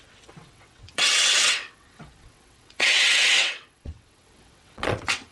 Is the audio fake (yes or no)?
yes